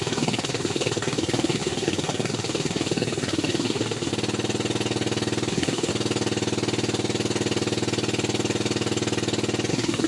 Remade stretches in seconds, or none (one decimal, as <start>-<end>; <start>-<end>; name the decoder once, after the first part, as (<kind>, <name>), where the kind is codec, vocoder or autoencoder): 0.0-4.1 (codec, SNAC); 5.5-5.9; 9.7-10.1

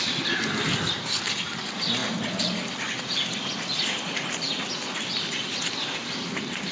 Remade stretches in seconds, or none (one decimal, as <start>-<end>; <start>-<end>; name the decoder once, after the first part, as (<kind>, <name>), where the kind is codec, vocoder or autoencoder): none